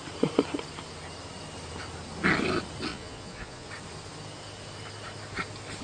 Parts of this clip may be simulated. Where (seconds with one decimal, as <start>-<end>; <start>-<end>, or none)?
2.9-3.7